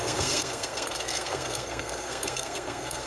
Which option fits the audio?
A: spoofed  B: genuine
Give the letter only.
A